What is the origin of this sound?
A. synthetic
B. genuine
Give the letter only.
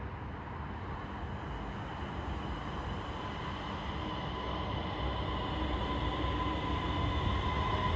B